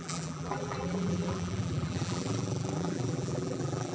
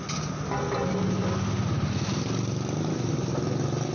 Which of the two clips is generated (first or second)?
first